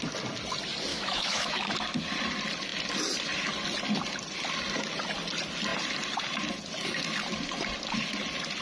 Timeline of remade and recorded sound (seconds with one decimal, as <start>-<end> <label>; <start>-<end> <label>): 0.0-0.9 recorded; 0.9-1.7 remade; 1.7-8.6 recorded

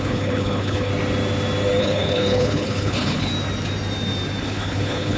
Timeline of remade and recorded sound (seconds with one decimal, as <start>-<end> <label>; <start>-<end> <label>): 0.0-0.9 remade; 0.9-1.8 recorded; 1.8-3.3 remade; 3.3-4.4 recorded; 4.4-5.2 remade

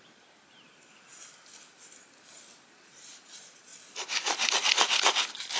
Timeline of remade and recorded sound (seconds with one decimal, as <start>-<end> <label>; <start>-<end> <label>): 0.0-5.6 remade

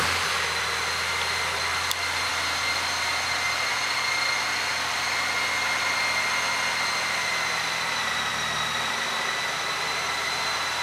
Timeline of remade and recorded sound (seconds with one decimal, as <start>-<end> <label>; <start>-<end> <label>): 0.0-1.7 recorded; 1.7-2.3 remade; 2.3-8.3 recorded; 8.3-9.1 remade; 9.1-10.8 recorded

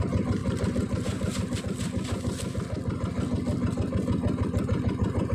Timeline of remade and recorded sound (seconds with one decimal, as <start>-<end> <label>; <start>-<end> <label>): 0.0-0.4 recorded; 0.4-1.6 remade; 1.6-5.3 recorded

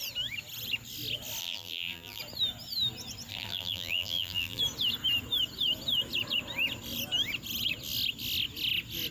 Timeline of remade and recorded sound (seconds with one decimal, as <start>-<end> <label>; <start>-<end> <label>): 0.0-1.4 recorded; 1.4-2.2 remade; 2.2-3.3 recorded; 3.3-4.6 remade; 4.6-9.1 recorded

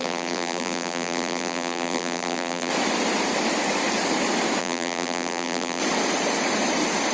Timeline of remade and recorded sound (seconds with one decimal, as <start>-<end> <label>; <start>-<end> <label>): 0.0-2.7 remade; 2.7-4.6 recorded; 4.6-5.8 remade; 5.8-7.1 recorded